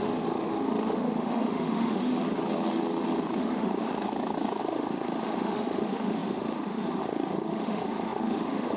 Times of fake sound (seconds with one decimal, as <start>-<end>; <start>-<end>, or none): 0.0-2.1; 3.4-3.9; 4.6-8.8

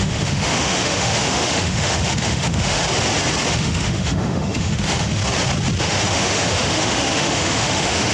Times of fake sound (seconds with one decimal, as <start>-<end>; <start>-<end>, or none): 0.0-2.8; 3.5-5.2; 5.8-8.1